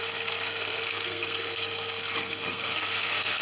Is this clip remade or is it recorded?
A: remade